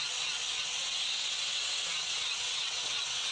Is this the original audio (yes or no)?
no